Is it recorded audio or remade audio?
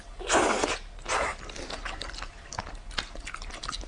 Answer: recorded